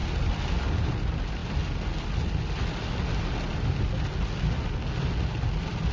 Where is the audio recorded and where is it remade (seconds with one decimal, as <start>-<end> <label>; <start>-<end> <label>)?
0.0-5.9 recorded